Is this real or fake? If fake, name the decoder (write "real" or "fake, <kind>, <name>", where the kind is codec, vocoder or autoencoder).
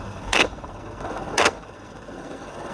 fake, codec, SNAC